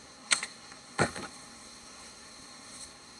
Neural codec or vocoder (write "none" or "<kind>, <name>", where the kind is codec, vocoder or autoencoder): codec, SNAC